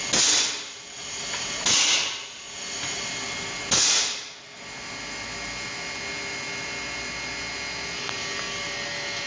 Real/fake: real